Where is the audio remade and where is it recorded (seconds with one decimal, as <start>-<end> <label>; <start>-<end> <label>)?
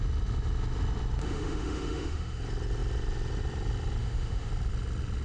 0.0-1.2 recorded; 1.2-2.4 remade; 2.4-4.0 recorded; 4.0-4.5 remade; 4.5-5.2 recorded